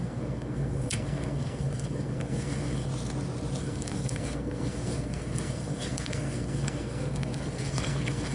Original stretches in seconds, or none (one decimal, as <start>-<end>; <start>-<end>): 2.9-3.6